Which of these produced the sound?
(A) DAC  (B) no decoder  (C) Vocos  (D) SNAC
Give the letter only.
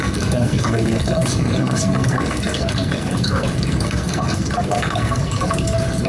D